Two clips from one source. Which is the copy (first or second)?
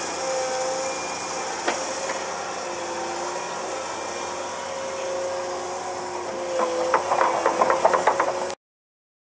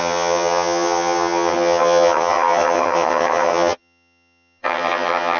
second